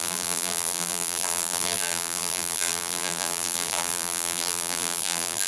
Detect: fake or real fake